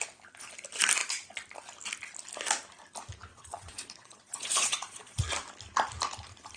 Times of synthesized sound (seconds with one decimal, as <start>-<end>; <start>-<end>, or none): 3.3-5.2